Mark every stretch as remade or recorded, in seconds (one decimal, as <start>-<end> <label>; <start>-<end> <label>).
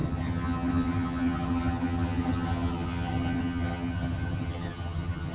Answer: 0.0-5.3 remade